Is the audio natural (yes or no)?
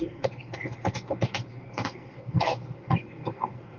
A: no